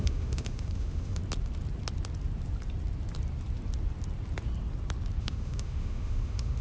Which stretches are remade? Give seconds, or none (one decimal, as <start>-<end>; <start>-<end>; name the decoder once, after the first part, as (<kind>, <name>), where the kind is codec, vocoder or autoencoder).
0.0-1.2 (autoencoder, DAC-VAE); 5.2-6.6